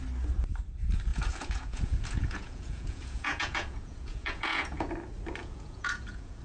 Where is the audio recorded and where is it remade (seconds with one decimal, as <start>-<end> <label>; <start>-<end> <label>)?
0.0-1.1 recorded; 1.1-4.9 remade; 4.9-5.4 recorded; 5.4-6.4 remade